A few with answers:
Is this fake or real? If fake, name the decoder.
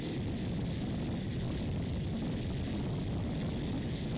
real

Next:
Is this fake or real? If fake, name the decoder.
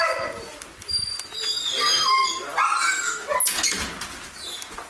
real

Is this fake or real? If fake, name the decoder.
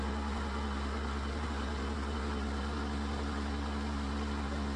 real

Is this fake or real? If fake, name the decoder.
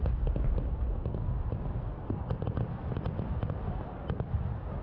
real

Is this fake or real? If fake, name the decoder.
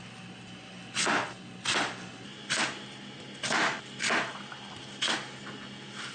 real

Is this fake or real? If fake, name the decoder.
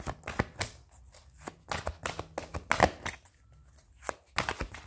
real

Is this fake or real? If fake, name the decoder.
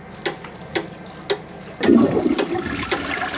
real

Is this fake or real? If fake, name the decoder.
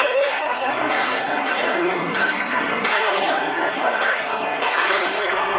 fake, codec, SNAC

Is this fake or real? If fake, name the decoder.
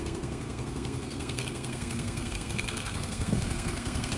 fake, codec, SNAC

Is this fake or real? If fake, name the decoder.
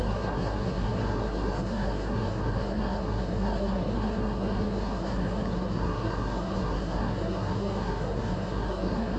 fake, codec, SNAC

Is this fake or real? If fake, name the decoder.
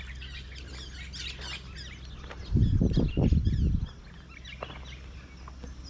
real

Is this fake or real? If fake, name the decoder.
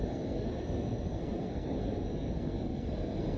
fake, codec, SNAC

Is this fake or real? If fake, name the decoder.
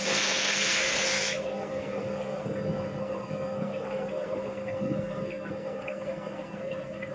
fake, codec, SNAC